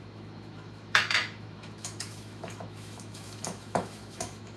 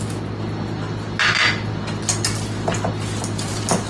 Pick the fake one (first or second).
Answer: first